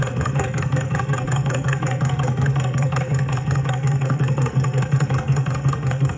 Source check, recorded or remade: remade